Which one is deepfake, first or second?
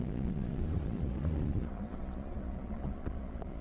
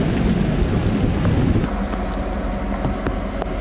first